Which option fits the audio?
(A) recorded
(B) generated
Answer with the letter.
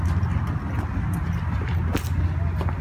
A